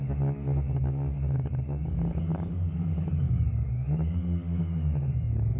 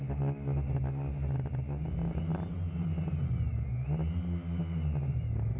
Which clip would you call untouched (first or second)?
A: second